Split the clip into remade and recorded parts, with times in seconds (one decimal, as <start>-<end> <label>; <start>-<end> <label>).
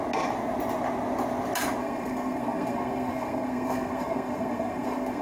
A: 0.0-1.8 recorded; 1.8-5.2 remade